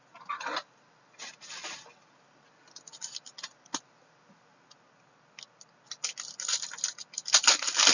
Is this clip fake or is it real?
real